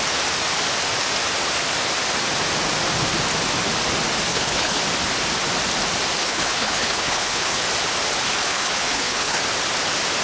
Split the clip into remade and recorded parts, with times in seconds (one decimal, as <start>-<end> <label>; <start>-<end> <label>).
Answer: 0.0-4.3 recorded; 4.3-4.8 remade; 4.8-6.2 recorded; 6.2-7.6 remade; 7.6-8.4 recorded; 8.4-9.4 remade; 9.4-10.2 recorded